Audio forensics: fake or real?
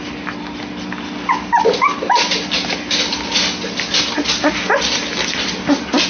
real